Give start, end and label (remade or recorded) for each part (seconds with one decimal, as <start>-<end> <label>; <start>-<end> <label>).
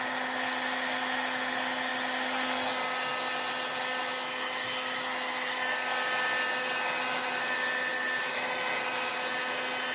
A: 0.0-9.9 recorded